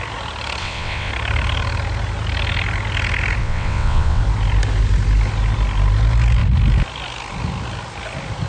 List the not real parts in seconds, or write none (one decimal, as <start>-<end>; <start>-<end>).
0.6-1.1; 3.4-4.2